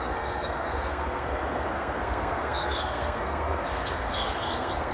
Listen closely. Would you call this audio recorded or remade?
remade